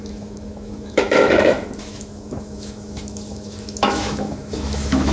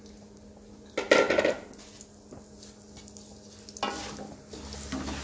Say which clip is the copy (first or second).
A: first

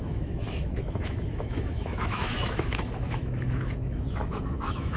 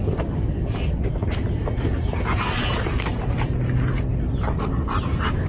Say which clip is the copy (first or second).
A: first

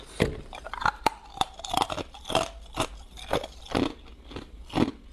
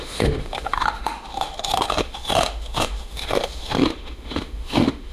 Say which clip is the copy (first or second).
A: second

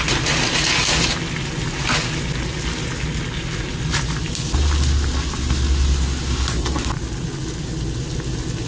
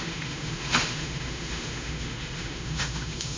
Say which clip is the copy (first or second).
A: second